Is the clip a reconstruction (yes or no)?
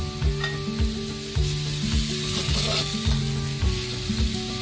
no